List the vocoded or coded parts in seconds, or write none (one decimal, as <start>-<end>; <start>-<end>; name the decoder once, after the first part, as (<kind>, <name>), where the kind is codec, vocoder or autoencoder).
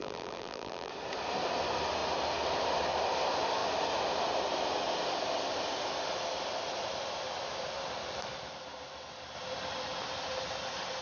0.0-0.9 (vocoder, BigVGAN v2)